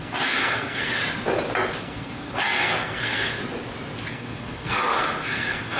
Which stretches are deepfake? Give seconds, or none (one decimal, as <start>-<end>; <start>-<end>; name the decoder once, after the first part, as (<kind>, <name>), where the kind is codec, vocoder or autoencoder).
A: 0.0-1.0 (codec, SNAC); 1.8-3.4; 4.1-5.8